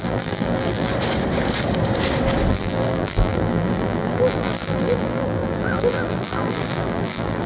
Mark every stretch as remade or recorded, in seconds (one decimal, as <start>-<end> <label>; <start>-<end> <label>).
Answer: 0.0-0.9 remade; 0.9-2.5 recorded; 2.5-7.5 remade